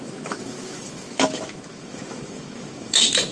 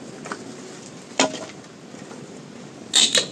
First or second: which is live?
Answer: second